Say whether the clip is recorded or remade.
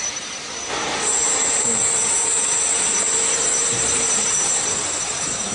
remade